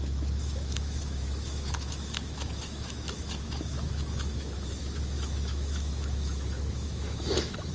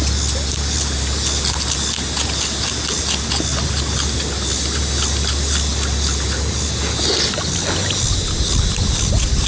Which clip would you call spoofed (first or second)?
first